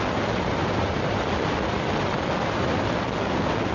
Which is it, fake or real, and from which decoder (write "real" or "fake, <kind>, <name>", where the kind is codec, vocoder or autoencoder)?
real